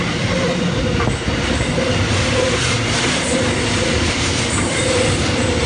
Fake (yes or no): no